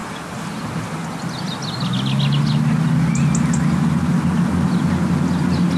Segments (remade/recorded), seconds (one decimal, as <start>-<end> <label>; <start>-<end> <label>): 0.0-5.8 recorded